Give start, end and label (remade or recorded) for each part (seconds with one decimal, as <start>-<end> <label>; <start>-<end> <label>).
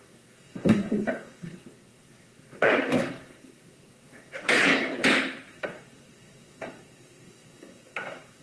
0.0-5.0 remade; 5.0-5.5 recorded; 5.5-8.4 remade